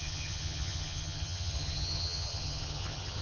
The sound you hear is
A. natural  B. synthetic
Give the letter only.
B